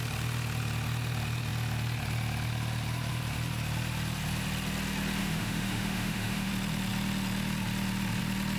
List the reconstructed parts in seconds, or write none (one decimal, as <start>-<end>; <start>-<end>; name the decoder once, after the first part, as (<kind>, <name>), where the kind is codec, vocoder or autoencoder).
5.2-6.5 (autoencoder, DAC-VAE)